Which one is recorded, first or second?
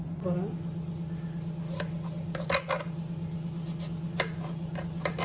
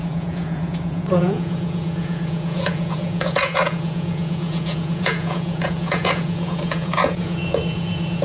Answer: first